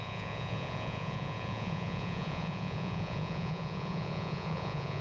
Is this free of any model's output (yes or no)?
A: no